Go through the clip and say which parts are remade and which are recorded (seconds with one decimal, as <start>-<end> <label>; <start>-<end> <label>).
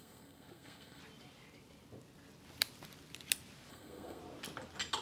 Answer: 0.0-1.0 remade; 1.0-3.7 recorded; 3.7-4.2 remade; 4.2-5.0 recorded